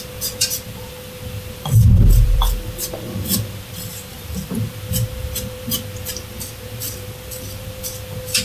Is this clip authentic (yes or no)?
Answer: no